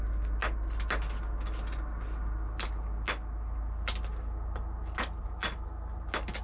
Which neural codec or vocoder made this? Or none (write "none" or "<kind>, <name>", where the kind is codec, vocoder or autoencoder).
none